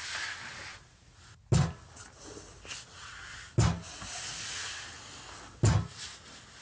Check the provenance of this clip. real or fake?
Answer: real